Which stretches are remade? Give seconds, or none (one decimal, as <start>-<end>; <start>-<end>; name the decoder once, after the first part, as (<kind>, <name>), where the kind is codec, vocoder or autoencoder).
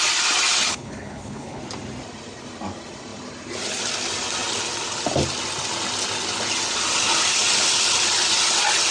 0.7-1.6 (codec, HILCodec)